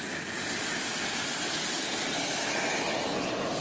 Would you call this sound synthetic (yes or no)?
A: no